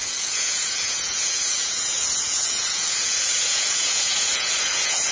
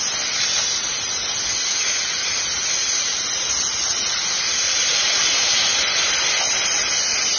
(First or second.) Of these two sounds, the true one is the second